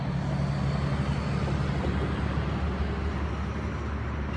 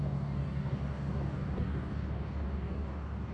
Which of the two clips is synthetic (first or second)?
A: second